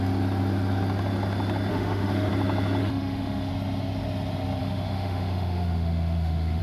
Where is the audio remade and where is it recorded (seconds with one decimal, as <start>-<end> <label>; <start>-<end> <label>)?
0.0-1.7 recorded; 1.7-2.3 remade; 2.3-2.8 recorded; 2.8-3.5 remade; 3.5-4.6 recorded; 4.6-6.6 remade